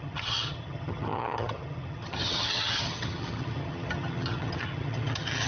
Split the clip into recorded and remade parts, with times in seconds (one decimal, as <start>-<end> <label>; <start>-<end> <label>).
0.0-5.5 remade